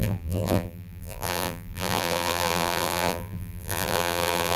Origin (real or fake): fake